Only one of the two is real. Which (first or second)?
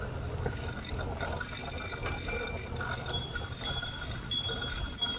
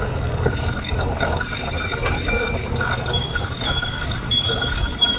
first